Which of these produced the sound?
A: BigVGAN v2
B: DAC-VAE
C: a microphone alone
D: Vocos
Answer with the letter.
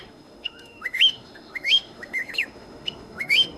B